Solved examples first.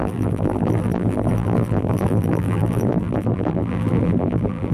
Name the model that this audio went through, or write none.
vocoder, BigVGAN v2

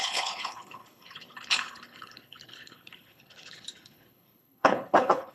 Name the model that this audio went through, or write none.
codec, HILCodec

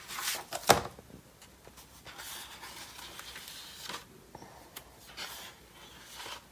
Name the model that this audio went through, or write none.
none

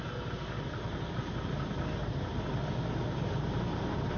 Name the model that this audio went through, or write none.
none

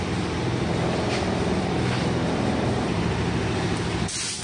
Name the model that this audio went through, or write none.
none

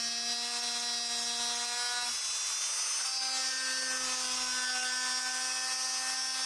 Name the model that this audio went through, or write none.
none